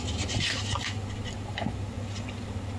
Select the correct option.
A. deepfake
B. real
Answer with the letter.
B